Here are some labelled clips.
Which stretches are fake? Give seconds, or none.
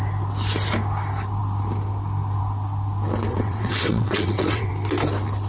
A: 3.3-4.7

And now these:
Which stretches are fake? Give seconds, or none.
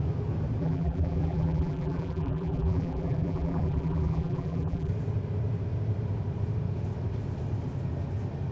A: 0.6-4.9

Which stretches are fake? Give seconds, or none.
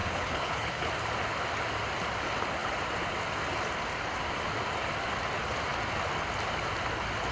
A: 0.0-0.9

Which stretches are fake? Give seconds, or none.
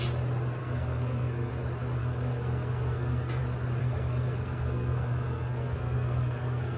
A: 0.6-1.5; 2.0-3.4; 3.8-6.8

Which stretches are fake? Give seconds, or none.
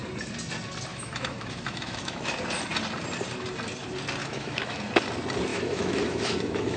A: 0.9-2.3; 4.2-4.8; 5.5-6.8